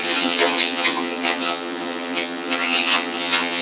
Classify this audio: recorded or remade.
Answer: remade